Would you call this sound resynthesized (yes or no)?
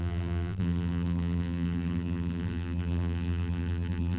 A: yes